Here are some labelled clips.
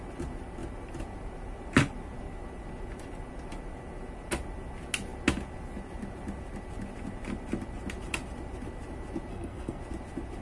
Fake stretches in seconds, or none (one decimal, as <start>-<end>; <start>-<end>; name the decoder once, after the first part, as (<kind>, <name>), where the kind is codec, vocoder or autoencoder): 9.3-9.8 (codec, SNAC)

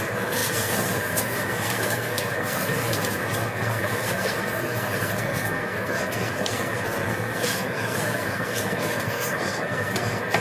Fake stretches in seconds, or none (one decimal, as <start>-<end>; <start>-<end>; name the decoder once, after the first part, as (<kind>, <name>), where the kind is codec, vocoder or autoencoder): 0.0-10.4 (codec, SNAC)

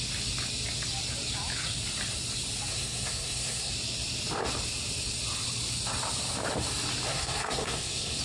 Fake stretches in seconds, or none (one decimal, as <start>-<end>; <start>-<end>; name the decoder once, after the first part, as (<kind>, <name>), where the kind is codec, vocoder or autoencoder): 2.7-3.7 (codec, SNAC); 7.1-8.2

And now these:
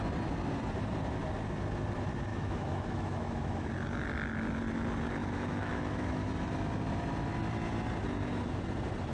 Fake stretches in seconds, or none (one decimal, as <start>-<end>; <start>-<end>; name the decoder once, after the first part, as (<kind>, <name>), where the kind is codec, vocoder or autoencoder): 2.3-3.7 (autoencoder, DAC-VAE); 5.2-6.3